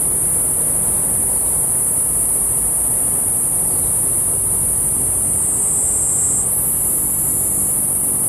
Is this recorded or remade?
recorded